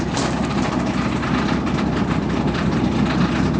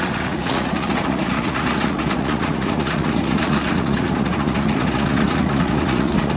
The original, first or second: first